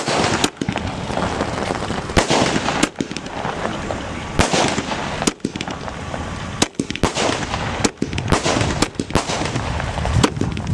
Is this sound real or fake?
real